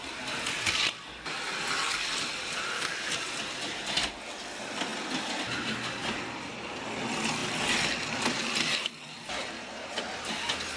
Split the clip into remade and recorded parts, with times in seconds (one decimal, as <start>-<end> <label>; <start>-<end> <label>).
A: 0.0-10.8 recorded

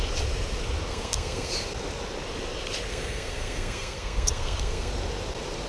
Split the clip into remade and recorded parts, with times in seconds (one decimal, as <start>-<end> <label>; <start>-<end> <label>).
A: 0.0-0.9 recorded; 0.9-1.5 remade; 1.5-2.9 recorded; 2.9-4.9 remade; 4.9-5.7 recorded

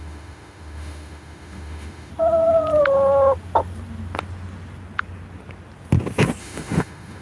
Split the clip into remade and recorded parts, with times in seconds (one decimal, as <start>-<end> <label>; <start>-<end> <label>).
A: 0.0-2.1 remade; 2.1-6.4 recorded; 6.4-7.2 remade

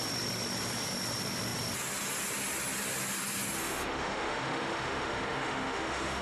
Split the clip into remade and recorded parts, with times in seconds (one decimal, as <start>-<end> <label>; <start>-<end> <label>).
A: 0.0-3.6 recorded; 3.6-6.2 remade